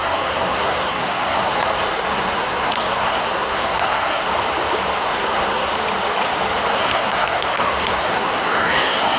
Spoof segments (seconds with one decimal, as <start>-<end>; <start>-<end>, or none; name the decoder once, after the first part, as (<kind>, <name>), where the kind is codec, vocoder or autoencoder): 0.0-4.3 (codec, SNAC); 5.0-5.7; 6.7-9.2